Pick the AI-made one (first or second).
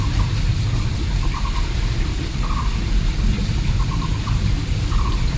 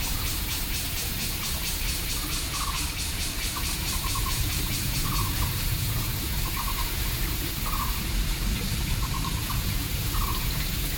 second